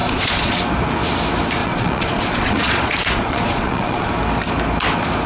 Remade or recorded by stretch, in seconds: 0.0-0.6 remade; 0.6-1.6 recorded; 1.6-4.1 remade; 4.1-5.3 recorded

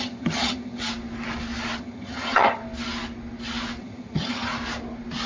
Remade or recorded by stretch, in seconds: 0.0-0.8 remade; 0.8-1.8 recorded; 1.8-2.6 remade; 2.6-3.8 recorded; 3.8-4.5 remade; 4.5-5.3 recorded

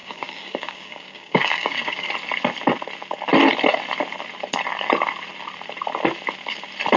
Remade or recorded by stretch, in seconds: 0.0-2.1 remade; 2.1-7.0 recorded

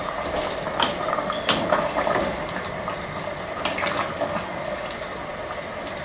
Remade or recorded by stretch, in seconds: 0.0-6.0 recorded

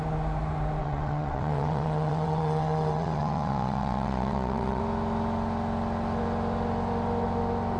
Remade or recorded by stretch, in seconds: 0.0-0.8 recorded; 0.8-4.8 remade; 4.8-7.8 recorded

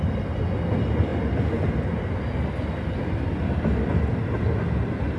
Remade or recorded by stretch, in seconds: 0.0-5.2 recorded